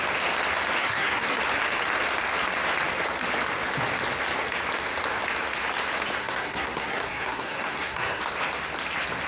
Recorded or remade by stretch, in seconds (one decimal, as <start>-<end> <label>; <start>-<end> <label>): 0.0-0.8 recorded; 0.8-1.4 remade; 1.4-6.2 recorded; 6.2-8.2 remade; 8.2-9.3 recorded